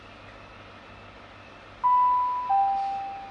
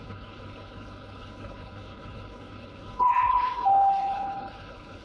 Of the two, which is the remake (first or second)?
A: second